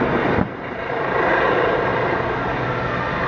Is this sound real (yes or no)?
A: yes